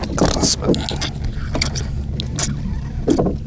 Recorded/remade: recorded